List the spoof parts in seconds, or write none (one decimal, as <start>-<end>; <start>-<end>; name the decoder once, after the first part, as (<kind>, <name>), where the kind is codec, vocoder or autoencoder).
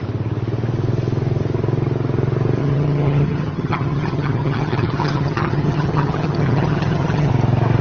2.6-7.3 (vocoder, HiFi-GAN)